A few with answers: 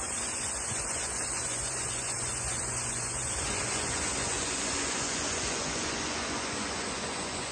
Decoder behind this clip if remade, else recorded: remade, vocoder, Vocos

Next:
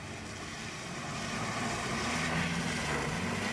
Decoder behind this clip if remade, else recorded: recorded